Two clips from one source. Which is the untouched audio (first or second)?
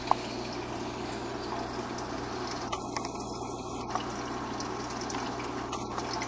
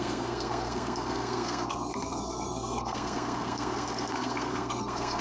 first